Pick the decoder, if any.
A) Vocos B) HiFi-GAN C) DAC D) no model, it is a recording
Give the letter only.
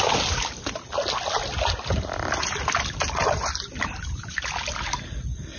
D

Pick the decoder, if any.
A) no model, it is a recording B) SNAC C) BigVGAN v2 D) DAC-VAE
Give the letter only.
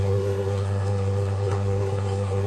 B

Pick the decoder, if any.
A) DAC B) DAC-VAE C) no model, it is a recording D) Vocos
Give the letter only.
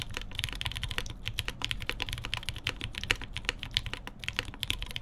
C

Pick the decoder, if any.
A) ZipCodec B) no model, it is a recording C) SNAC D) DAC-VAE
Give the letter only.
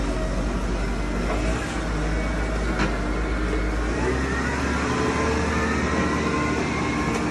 B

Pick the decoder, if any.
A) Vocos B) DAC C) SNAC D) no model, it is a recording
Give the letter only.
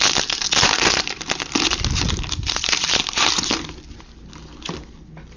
D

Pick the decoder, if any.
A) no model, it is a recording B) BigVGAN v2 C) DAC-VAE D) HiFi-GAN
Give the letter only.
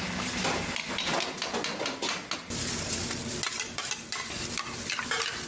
A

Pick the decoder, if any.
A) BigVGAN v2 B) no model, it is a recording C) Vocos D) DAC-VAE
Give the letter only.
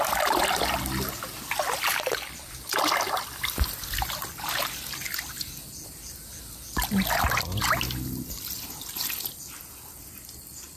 B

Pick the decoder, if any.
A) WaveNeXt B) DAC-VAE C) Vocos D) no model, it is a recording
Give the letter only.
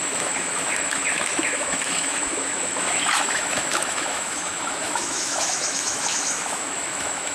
B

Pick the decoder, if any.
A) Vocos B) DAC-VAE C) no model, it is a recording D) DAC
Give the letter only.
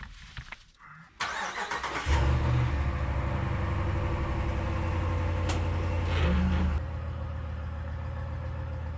C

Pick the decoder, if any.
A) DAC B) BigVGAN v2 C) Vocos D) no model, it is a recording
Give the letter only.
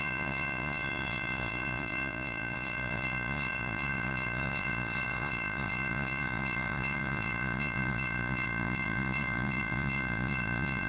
C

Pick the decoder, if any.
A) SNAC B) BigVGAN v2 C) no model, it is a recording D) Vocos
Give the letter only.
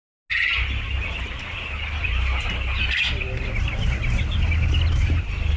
C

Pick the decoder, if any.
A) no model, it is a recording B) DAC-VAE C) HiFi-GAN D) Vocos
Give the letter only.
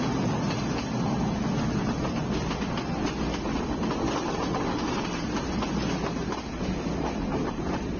A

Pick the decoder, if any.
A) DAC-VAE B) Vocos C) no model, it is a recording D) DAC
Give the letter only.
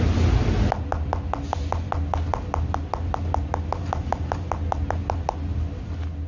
C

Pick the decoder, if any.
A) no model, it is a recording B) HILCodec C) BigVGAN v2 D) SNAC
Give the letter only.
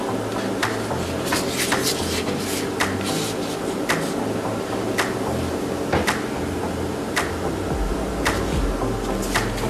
A